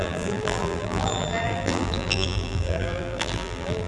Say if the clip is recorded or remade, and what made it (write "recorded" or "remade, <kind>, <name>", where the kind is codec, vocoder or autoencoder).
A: remade, vocoder, BigVGAN v2